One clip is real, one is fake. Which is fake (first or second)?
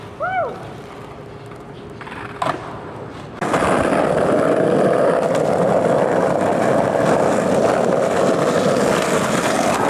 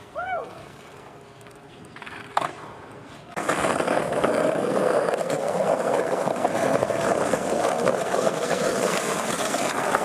second